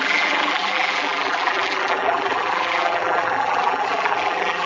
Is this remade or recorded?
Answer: remade